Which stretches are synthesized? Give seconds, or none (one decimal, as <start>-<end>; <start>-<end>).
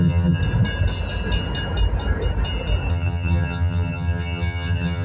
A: 0.0-0.4; 2.9-5.0